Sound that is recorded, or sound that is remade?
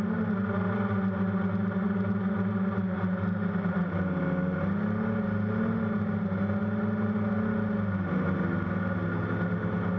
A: recorded